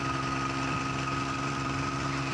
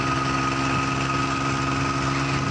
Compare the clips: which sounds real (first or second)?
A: second